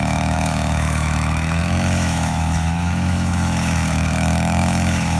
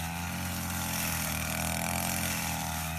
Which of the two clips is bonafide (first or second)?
second